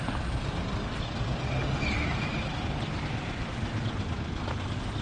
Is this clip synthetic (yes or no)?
no